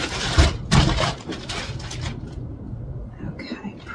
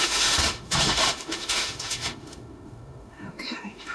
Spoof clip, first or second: second